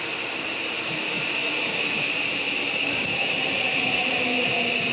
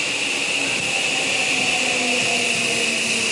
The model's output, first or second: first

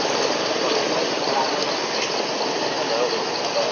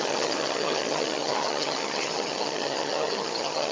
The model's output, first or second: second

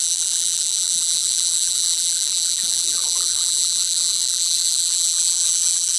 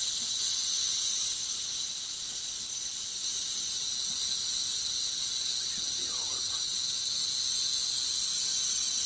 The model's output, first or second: first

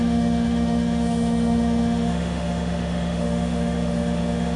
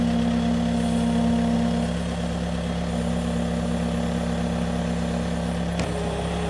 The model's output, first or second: first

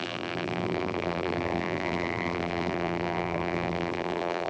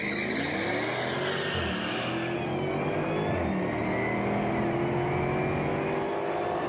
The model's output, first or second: first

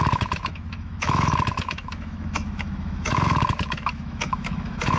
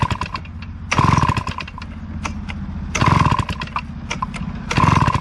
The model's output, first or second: first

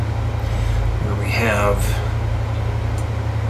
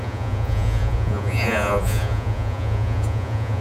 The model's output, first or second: second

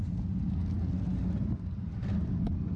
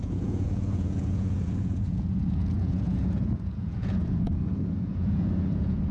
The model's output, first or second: second